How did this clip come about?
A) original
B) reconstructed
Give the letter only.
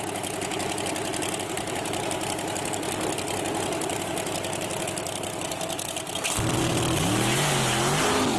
A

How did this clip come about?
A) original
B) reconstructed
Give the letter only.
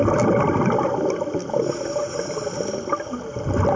A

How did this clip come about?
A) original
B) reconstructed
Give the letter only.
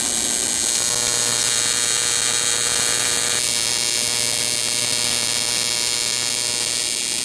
A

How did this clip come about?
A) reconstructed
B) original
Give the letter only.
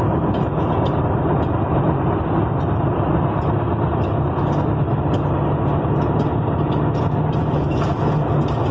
B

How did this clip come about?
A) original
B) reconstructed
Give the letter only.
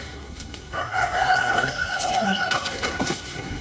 B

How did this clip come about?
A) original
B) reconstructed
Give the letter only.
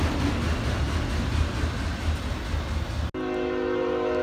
A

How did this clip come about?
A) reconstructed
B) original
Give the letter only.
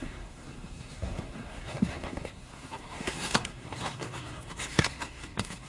A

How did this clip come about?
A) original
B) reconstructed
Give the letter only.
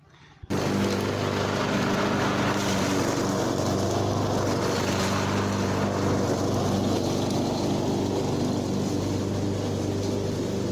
A